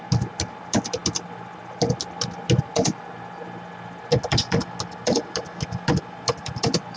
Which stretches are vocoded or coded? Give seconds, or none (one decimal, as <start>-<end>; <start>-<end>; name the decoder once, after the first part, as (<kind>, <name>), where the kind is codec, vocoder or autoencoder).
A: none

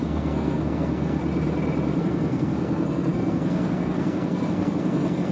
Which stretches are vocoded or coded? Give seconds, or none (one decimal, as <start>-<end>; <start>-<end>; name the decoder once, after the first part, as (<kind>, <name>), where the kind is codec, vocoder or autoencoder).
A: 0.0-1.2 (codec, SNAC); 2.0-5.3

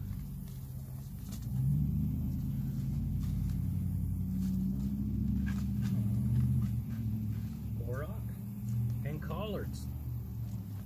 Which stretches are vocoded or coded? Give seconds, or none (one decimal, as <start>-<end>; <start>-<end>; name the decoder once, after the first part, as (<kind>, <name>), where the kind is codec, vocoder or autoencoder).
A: 1.7-3.1 (vocoder, Vocos); 5.9-7.5

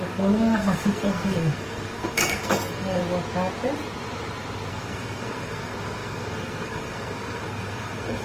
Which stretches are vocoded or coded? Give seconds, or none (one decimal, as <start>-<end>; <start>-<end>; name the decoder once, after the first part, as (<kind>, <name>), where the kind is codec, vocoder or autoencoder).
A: 0.0-3.0 (codec, SNAC); 4.7-8.2

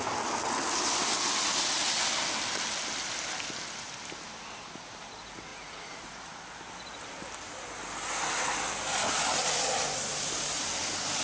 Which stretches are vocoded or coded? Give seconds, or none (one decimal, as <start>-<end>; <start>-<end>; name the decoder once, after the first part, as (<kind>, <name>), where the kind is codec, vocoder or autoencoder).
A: 5.5-6.4 (vocoder, Vocos)

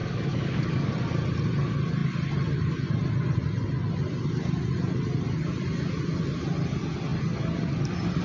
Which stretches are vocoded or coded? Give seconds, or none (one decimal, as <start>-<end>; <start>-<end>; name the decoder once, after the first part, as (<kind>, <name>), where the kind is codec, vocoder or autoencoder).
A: 0.0-0.9 (codec, DAC)

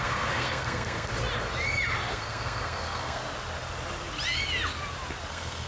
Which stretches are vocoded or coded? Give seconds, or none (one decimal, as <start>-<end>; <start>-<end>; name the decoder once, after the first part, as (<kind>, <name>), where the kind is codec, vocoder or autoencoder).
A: 0.0-1.1 (codec, SNAC); 2.1-3.2; 5.3-5.7